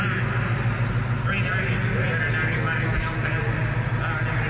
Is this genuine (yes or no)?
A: yes